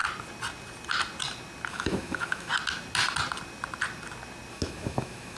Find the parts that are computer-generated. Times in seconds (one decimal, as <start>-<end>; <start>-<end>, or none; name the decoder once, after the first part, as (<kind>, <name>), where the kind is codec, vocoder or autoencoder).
1.7-2.5 (autoencoder, DAC-VAE); 4.5-5.4